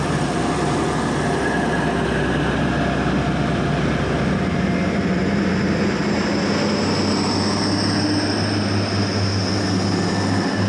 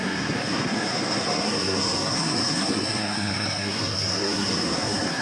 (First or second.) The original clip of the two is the first